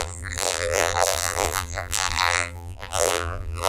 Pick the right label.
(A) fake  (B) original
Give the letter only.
A